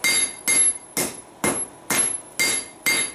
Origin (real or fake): real